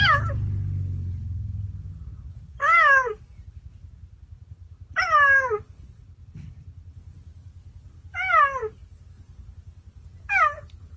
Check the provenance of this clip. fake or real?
real